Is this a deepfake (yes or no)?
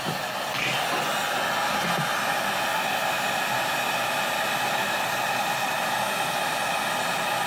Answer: no